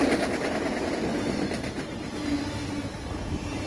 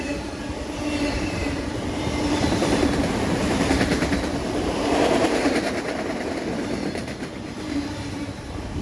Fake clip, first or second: second